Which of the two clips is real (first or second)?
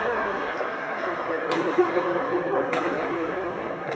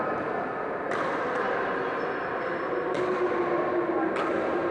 second